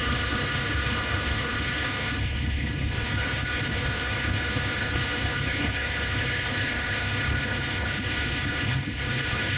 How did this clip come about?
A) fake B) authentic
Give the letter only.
A